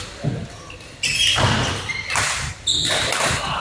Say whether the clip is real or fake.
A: real